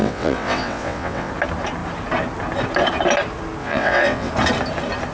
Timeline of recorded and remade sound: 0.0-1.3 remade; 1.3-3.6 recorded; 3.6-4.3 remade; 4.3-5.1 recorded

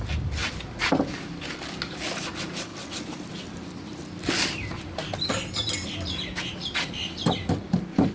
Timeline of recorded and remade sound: 0.0-8.1 recorded

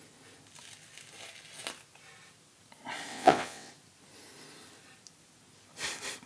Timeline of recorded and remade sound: 0.0-3.1 recorded; 3.1-3.7 remade; 3.7-6.3 recorded